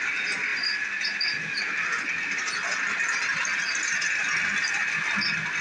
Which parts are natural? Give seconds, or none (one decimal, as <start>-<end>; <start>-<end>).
0.0-5.6